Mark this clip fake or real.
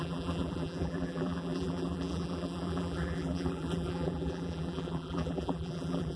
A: fake